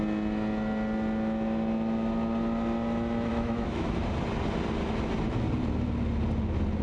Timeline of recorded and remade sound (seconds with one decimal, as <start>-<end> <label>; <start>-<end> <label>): 0.0-3.3 recorded; 3.3-4.0 remade; 4.0-6.8 recorded